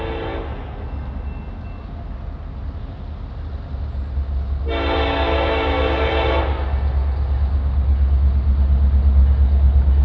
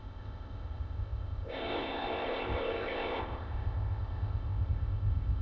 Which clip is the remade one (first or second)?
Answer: second